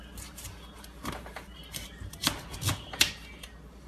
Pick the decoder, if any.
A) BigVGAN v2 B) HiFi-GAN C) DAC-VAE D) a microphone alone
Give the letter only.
D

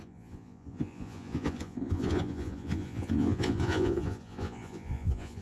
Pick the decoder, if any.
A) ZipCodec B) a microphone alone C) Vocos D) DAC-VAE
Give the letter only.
C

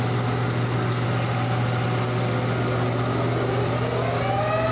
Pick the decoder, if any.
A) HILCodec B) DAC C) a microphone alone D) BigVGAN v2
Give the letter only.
C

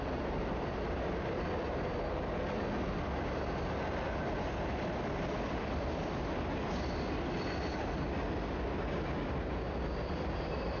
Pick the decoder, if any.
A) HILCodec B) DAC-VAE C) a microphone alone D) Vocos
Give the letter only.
C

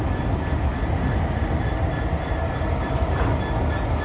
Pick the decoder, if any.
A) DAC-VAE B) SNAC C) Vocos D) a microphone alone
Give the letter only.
D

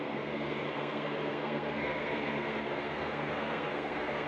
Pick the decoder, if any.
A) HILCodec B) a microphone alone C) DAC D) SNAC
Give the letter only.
D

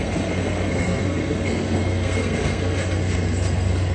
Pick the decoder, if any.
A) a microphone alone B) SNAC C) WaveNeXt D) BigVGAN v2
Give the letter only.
B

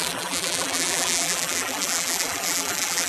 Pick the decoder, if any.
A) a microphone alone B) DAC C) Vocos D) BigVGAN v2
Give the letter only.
D